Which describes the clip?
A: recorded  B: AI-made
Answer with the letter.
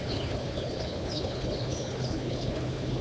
B